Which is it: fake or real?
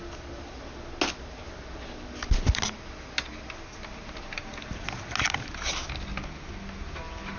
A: real